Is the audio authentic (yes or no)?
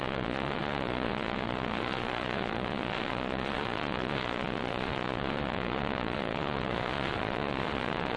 no